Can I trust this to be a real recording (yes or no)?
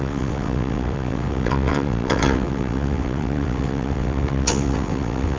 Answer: no